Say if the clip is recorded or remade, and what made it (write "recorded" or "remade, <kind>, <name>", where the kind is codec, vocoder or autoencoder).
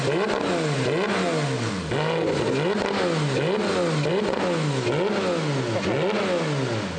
recorded